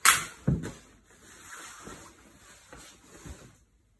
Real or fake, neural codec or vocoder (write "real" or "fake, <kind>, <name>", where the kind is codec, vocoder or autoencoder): real